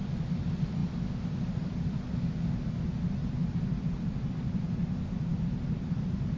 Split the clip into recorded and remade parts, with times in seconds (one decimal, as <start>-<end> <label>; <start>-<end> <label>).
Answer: 0.0-6.4 remade